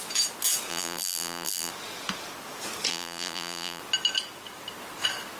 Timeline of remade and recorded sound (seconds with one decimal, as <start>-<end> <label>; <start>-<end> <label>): 0.0-0.7 recorded; 0.7-1.7 remade; 1.7-2.9 recorded; 2.9-3.8 remade; 3.8-5.4 recorded